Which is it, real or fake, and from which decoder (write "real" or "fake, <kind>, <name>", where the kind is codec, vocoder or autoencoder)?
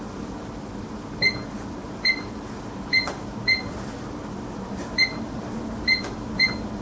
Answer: real